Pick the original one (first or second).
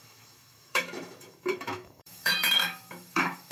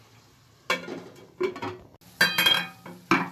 second